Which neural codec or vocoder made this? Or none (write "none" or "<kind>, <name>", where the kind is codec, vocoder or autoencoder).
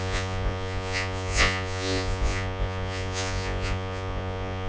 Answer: vocoder, Vocos